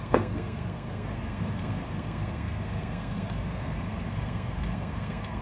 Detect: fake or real fake